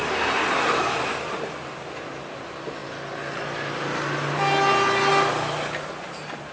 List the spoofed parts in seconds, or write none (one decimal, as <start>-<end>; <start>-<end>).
none